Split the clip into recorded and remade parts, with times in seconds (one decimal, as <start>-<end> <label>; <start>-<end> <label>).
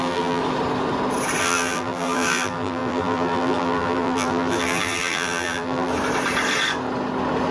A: 0.0-0.4 remade; 0.4-1.4 recorded; 1.4-5.9 remade; 5.9-7.5 recorded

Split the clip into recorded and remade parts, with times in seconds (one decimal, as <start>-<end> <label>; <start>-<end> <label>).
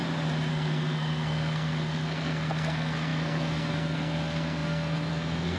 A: 0.0-0.5 recorded; 0.5-5.6 remade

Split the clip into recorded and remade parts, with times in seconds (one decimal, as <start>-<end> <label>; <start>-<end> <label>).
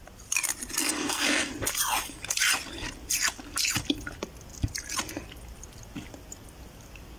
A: 0.0-0.8 recorded; 0.8-1.5 remade; 1.5-7.2 recorded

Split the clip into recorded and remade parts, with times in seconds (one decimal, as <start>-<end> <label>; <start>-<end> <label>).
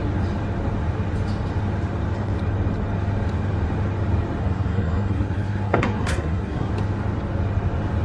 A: 0.0-4.4 recorded; 4.4-6.7 remade; 6.7-8.0 recorded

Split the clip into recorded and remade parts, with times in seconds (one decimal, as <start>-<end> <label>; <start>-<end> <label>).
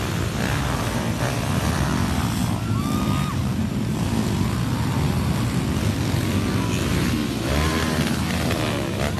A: 0.0-9.2 recorded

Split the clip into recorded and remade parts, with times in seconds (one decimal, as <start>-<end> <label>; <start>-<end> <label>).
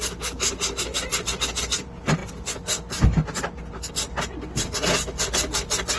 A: 0.0-6.0 recorded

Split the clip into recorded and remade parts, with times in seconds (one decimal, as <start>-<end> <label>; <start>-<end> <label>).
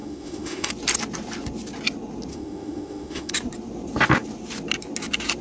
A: 0.0-0.7 remade; 0.7-2.3 recorded; 2.3-3.3 remade; 3.3-5.4 recorded